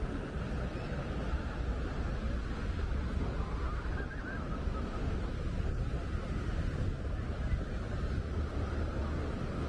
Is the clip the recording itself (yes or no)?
yes